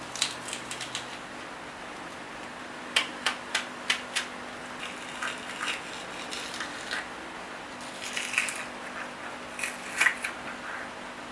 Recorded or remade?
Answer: recorded